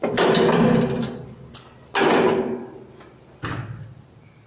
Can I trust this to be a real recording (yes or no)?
yes